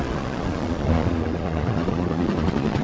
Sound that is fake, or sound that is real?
fake